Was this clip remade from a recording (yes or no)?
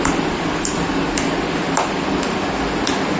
no